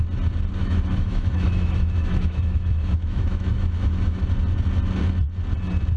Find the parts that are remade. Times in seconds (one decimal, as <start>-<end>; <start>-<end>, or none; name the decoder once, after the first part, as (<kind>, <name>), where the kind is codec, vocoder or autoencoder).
0.6-4.2 (autoencoder, DAC-VAE)